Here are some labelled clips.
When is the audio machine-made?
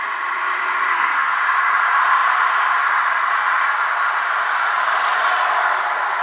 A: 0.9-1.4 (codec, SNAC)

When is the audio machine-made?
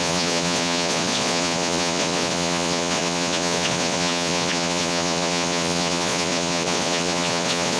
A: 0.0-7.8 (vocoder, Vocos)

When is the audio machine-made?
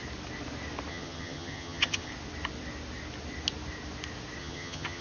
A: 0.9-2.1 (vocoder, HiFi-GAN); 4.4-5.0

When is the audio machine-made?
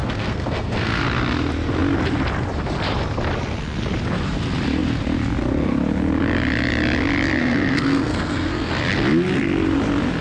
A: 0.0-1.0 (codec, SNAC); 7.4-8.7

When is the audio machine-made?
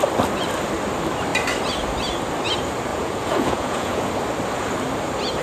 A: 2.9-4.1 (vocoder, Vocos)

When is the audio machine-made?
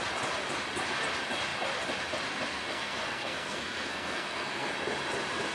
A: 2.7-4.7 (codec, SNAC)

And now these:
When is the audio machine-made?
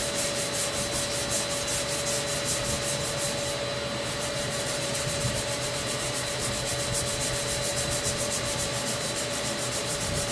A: 4.0-6.7 (vocoder, BigVGAN v2); 7.7-10.3